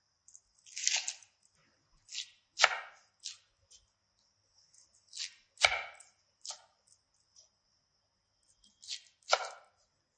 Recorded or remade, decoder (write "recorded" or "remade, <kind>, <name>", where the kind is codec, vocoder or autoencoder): recorded